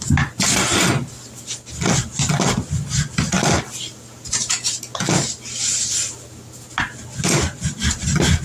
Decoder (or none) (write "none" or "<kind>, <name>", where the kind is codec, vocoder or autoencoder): none